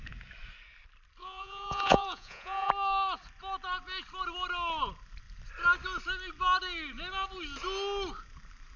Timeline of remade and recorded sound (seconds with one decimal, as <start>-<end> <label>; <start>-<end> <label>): 0.0-1.2 recorded; 1.2-2.7 remade; 2.7-8.8 recorded